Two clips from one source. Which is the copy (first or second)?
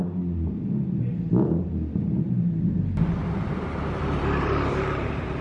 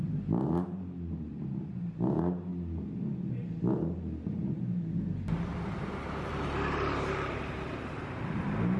first